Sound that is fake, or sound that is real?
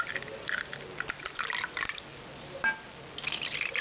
real